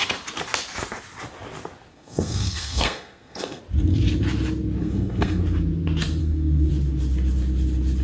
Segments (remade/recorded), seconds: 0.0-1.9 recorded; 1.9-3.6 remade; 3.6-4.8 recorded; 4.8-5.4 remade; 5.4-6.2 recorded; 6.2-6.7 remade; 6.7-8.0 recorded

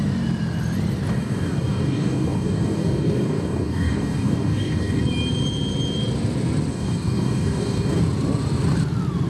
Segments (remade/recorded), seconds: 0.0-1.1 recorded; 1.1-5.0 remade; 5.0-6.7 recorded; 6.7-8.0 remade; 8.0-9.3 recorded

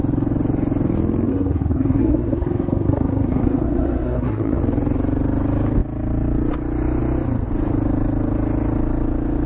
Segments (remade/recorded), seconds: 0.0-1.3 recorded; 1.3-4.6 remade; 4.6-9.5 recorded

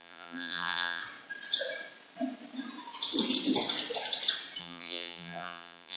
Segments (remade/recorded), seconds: 0.0-1.0 remade; 1.0-4.6 recorded; 4.6-6.0 remade

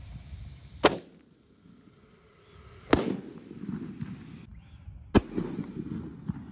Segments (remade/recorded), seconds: 0.0-6.5 recorded

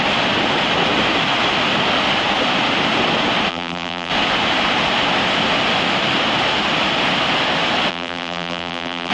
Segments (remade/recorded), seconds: 0.0-3.5 recorded; 3.5-4.1 remade; 4.1-7.9 recorded; 7.9-9.1 remade

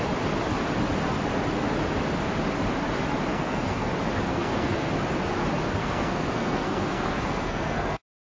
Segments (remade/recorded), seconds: 0.0-3.3 recorded; 3.3-3.9 remade; 3.9-4.3 recorded; 4.3-4.9 remade; 4.9-5.8 recorded; 5.8-8.0 remade; 8.0-8.4 recorded